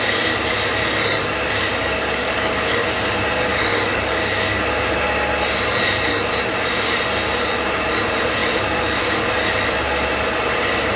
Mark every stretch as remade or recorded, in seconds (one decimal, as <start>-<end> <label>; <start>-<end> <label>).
0.0-1.8 recorded; 1.8-2.7 remade; 2.7-3.5 recorded; 3.5-4.6 remade; 4.6-11.0 recorded